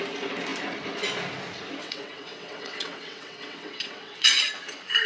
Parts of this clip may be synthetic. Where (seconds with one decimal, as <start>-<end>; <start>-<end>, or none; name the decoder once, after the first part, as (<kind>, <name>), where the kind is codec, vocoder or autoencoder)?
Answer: 1.8-4.4 (vocoder, WaveNeXt)